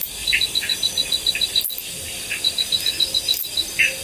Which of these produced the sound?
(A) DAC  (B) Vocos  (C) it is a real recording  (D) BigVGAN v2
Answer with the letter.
C